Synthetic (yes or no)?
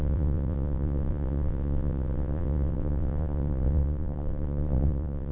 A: yes